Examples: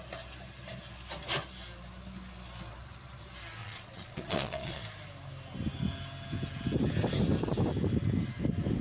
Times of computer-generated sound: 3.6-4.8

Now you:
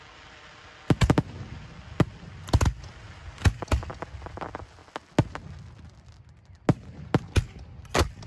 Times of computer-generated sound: none

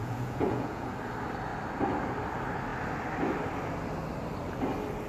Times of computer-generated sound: 0.0-0.9

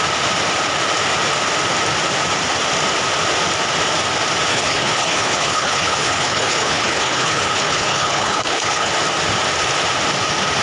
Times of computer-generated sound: 4.5-8.9

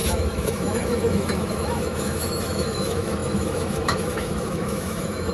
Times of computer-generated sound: 0.0-5.3

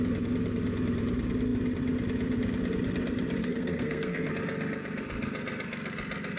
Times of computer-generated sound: 3.4-4.3

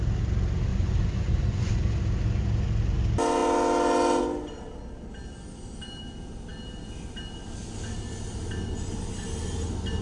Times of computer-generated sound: 0.7-1.7

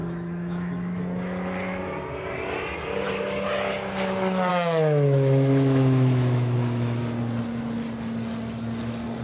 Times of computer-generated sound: 0.0-1.8; 4.5-7.0